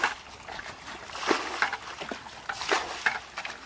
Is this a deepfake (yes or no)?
no